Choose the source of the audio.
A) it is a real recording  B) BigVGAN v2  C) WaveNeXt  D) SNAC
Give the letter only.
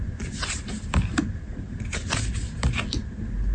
A